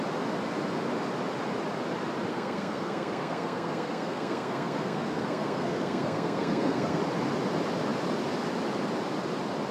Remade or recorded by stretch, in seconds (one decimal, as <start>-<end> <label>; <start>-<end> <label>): 0.0-2.3 recorded; 2.3-7.0 remade; 7.0-9.7 recorded